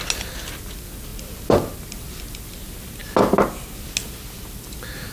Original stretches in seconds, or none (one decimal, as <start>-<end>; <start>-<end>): 0.0-5.1